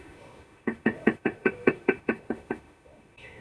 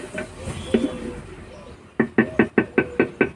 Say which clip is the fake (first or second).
first